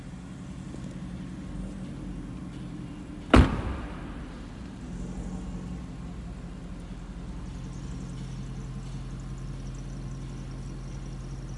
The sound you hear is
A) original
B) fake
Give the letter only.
A